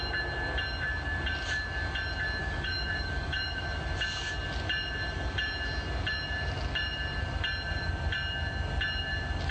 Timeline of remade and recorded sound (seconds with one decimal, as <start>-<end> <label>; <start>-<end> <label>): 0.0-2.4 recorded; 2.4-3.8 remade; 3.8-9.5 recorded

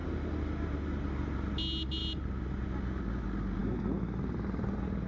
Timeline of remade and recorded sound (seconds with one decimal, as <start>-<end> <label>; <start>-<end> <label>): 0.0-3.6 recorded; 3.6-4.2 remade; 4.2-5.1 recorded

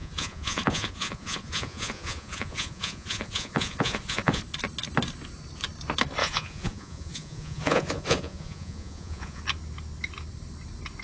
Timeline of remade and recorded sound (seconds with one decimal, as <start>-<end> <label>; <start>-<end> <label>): 0.0-4.4 remade; 4.4-6.2 recorded; 6.2-9.4 remade; 9.4-11.0 recorded

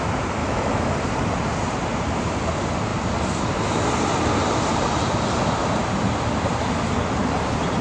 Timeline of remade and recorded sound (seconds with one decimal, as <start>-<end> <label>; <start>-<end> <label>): 0.0-0.4 recorded; 0.4-0.9 remade; 0.9-7.8 recorded

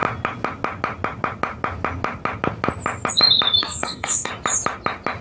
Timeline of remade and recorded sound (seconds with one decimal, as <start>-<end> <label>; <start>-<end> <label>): 0.0-3.6 recorded; 3.6-4.3 remade; 4.3-5.2 recorded

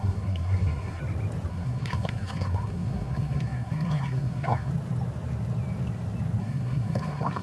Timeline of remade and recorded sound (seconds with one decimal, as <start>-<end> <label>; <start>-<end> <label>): 0.0-1.0 remade; 1.0-1.5 recorded; 1.5-4.7 remade; 4.7-6.4 recorded; 6.4-7.4 remade